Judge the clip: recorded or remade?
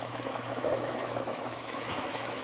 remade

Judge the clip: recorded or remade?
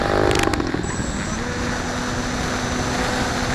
recorded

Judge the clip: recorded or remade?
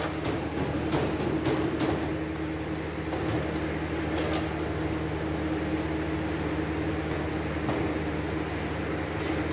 recorded